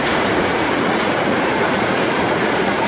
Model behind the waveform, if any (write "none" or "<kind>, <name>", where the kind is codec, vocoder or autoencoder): vocoder, Vocos